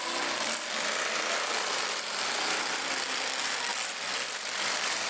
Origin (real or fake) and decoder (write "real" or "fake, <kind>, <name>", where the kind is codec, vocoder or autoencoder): real